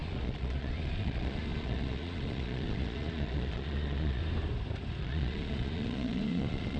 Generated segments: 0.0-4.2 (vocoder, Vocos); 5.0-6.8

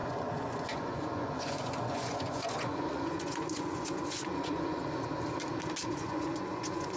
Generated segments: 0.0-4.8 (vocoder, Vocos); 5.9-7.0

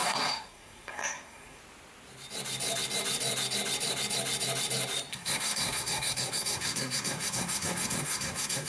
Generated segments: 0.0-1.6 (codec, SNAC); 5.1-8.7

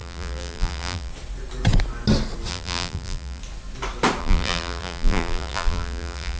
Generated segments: 0.0-1.1 (vocoder, BigVGAN v2); 2.5-3.4; 4.2-6.4

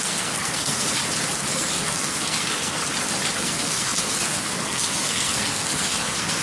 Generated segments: 0.0-1.0 (codec, SNAC); 1.5-2.8; 3.4-6.4

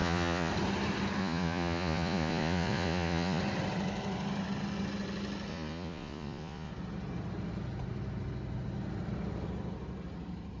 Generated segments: 0.0-0.5 (vocoder, Vocos); 1.2-3.4; 5.5-6.7